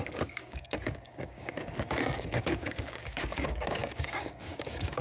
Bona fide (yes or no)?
no